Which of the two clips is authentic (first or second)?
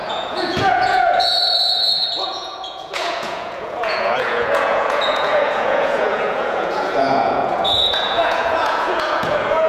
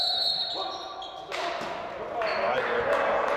second